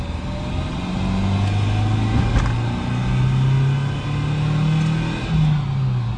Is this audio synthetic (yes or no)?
no